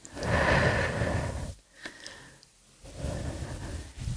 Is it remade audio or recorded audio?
recorded